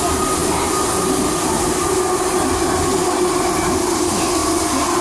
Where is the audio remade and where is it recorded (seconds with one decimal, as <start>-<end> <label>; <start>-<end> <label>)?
0.0-5.0 recorded